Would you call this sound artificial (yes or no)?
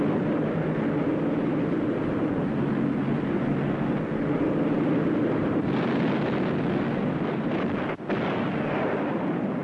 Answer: no